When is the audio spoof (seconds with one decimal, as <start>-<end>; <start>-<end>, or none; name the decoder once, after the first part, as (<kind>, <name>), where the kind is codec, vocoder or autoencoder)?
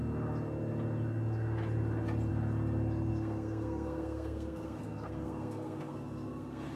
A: 3.1-6.8 (codec, SNAC)